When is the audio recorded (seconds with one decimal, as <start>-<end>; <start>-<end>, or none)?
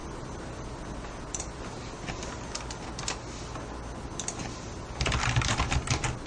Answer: 0.0-6.3